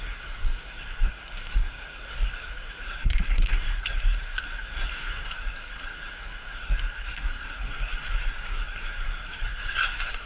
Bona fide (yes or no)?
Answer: no